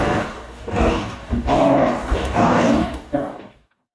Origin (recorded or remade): remade